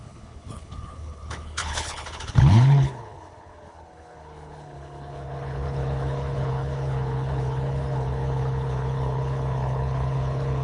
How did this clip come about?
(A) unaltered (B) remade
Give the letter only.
B